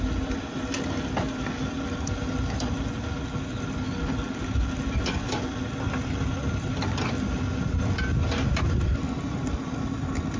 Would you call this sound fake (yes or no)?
no